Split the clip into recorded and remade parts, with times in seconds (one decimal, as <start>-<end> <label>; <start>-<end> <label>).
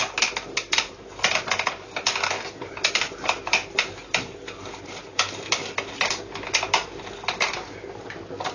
0.0-8.5 recorded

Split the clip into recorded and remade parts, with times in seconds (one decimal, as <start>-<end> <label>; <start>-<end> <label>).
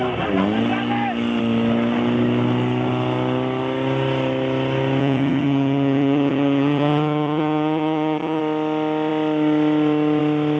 0.0-5.0 recorded; 5.0-8.4 remade; 8.4-10.6 recorded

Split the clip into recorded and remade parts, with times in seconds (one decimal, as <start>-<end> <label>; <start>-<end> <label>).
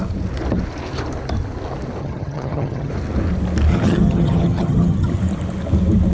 0.0-2.0 recorded; 2.0-2.9 remade; 2.9-3.7 recorded; 3.7-5.2 remade; 5.2-6.1 recorded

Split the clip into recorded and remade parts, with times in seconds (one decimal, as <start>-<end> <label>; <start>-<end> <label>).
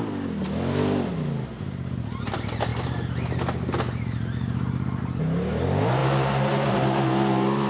0.0-7.7 recorded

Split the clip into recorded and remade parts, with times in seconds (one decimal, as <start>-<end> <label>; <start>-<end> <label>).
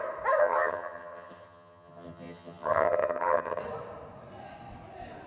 0.0-0.4 recorded; 0.4-3.6 remade; 3.6-5.3 recorded